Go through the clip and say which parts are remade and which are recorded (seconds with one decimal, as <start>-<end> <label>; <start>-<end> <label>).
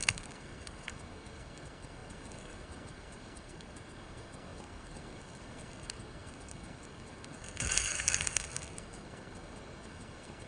0.0-10.5 remade